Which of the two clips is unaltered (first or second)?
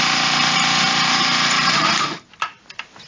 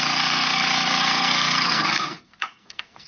first